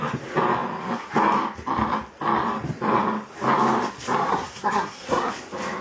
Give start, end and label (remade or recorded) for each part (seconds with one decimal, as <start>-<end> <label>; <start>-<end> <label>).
0.0-4.3 recorded; 4.3-5.3 remade; 5.3-5.8 recorded